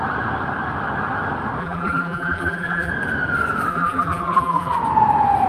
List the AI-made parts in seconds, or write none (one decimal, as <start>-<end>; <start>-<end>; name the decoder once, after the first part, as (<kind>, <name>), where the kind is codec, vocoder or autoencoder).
1.6-2.9 (vocoder, BigVGAN v2); 3.7-4.8